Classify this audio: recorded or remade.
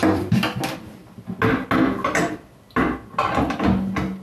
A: recorded